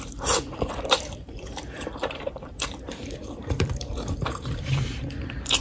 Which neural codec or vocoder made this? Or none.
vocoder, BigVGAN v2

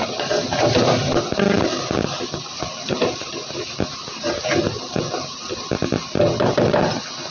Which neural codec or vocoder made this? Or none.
none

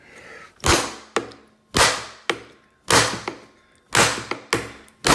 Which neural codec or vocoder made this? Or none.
none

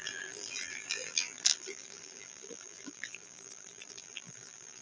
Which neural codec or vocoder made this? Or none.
vocoder, BigVGAN v2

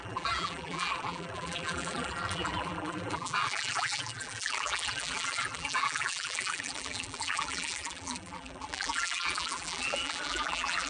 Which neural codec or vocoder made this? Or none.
vocoder, BigVGAN v2